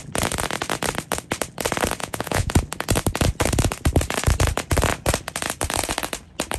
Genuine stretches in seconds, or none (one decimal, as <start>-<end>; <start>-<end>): 0.0-2.0; 2.5-6.6